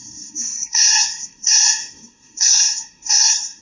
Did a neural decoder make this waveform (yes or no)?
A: yes